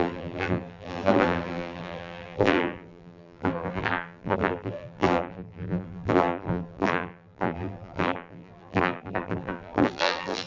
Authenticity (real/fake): fake